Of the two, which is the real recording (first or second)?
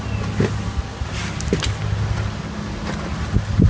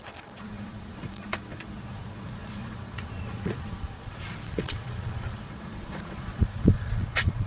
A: first